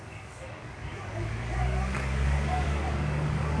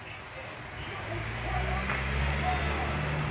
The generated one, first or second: first